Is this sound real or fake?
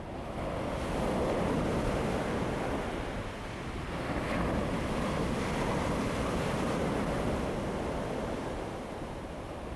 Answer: real